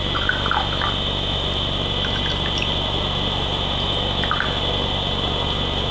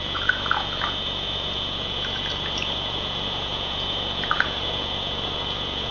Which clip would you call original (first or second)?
first